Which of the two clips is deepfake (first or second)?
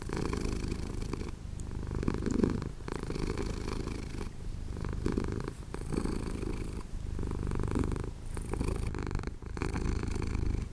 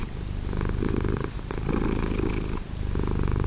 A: first